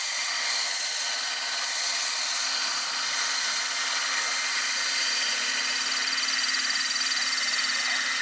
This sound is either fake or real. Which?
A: real